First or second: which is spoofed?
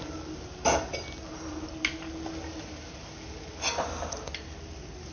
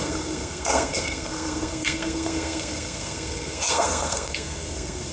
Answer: second